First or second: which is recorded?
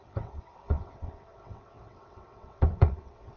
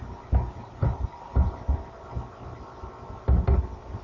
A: second